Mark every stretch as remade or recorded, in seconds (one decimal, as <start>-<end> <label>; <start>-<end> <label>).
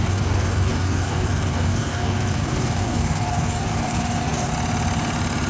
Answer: 0.0-4.5 remade; 4.5-5.5 recorded